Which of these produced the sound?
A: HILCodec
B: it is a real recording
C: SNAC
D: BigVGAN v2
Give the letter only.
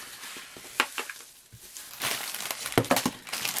B